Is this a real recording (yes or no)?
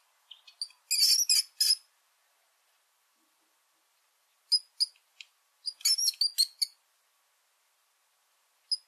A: yes